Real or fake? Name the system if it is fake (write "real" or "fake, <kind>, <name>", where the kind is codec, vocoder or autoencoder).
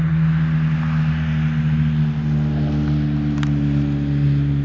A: real